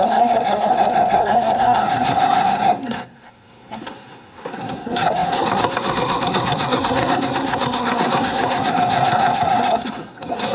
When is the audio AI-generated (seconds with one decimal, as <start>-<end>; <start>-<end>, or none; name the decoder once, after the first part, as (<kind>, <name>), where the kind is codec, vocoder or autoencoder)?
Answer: 0.0-10.5 (codec, SNAC)